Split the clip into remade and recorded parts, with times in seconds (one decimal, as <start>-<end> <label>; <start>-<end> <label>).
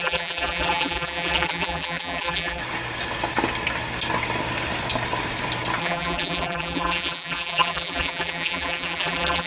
0.0-2.6 remade; 2.6-5.8 recorded; 5.8-9.5 remade